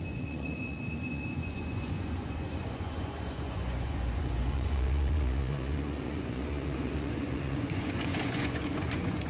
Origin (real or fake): fake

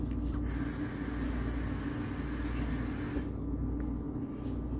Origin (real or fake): real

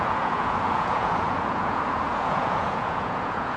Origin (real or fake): fake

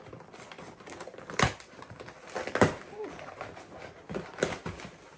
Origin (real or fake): real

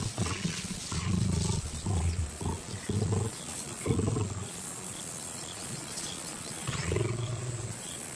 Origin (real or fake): fake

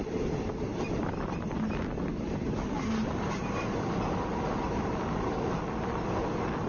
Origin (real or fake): real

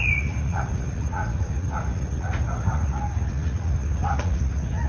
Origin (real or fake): fake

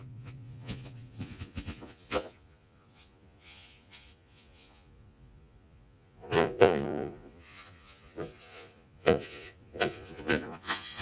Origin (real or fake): fake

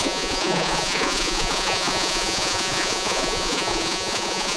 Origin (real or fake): fake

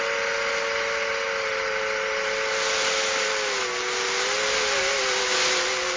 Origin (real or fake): real